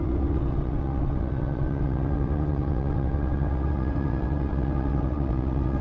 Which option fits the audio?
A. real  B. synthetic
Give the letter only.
B